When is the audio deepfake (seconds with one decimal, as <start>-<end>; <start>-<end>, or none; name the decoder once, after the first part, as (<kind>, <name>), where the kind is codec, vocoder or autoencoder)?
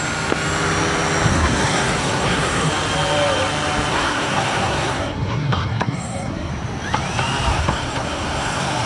1.3-2.7 (codec, SNAC); 3.9-6.5; 7.5-8.9